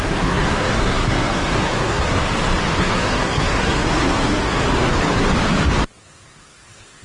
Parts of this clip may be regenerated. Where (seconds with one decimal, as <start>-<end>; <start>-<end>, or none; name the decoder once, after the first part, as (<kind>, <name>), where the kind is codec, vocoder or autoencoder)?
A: 0.0-2.2 (codec, SNAC); 2.8-4.9; 6.0-7.0

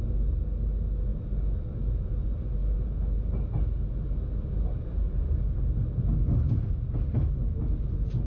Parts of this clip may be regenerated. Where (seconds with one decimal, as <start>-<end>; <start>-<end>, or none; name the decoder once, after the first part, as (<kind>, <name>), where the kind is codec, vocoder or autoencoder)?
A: none

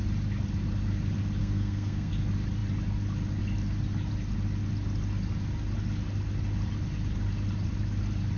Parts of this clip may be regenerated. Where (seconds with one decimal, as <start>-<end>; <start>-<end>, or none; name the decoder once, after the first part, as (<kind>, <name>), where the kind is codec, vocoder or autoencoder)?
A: 1.4-2.1 (codec, SNAC)